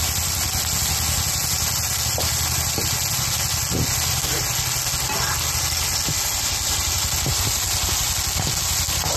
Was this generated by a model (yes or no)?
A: no